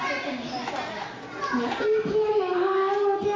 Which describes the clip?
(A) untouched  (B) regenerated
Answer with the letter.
A